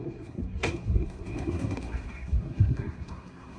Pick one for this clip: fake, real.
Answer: fake